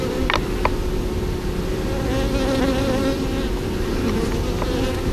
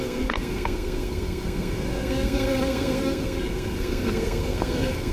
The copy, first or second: second